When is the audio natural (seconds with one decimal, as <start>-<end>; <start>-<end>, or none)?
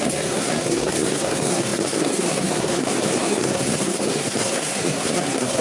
none